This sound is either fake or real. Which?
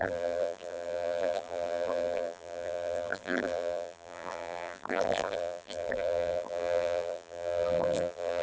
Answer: fake